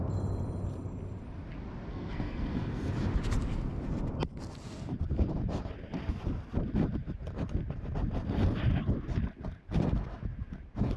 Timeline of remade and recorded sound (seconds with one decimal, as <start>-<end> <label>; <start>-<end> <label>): 0.0-1.9 recorded; 1.9-2.9 remade; 2.9-11.0 recorded